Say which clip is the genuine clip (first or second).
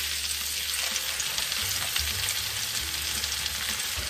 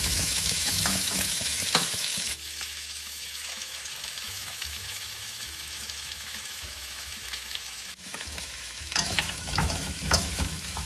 first